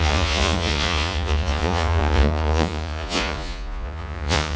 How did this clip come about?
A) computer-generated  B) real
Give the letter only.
A